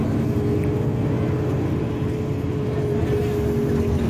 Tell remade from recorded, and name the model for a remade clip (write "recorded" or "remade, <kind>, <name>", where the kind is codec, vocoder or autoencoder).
recorded